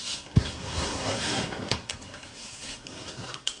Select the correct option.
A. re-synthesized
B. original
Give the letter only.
A